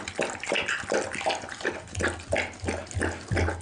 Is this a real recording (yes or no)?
yes